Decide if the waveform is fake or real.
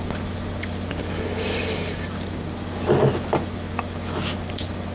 real